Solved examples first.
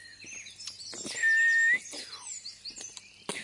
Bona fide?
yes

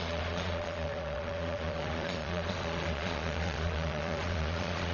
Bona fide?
no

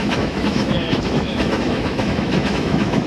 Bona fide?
no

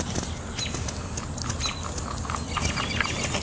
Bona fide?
yes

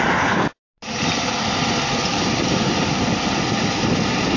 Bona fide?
yes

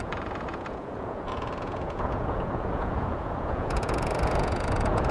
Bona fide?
no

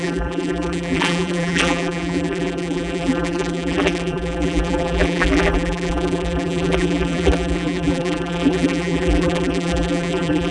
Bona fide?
no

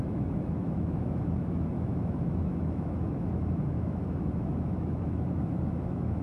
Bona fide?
no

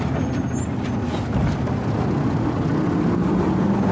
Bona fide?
yes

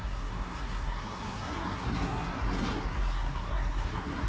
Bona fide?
no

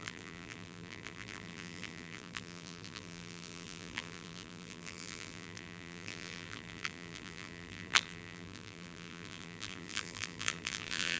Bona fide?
no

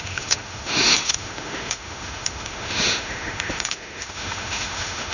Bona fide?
no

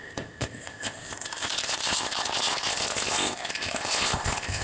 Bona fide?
no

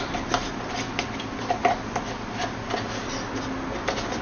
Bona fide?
yes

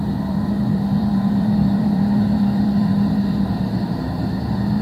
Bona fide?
no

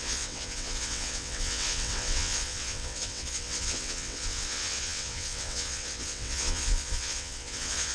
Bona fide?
no